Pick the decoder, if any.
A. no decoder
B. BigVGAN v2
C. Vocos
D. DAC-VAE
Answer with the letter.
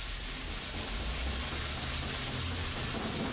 A